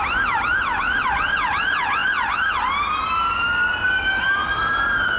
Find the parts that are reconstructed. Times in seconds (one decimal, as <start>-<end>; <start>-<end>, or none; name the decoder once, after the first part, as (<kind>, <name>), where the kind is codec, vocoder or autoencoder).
none